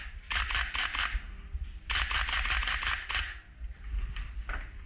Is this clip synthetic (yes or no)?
no